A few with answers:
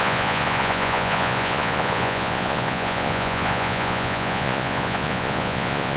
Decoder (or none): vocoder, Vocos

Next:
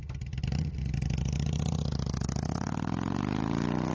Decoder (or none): none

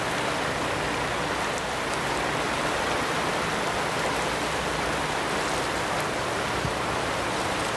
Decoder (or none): none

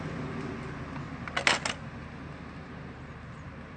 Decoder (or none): none